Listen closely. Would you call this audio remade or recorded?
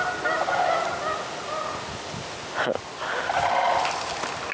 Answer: recorded